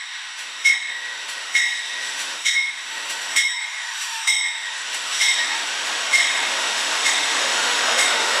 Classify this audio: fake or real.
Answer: fake